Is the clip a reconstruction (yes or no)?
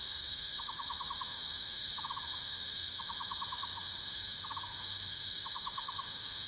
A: yes